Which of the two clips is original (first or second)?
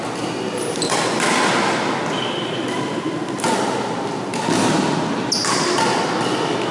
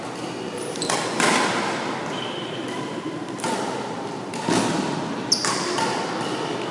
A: first